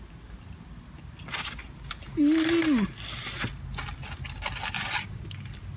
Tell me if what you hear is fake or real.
real